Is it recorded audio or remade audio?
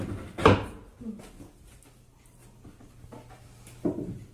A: recorded